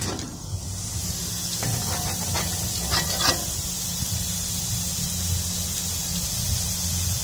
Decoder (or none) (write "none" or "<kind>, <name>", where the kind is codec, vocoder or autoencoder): none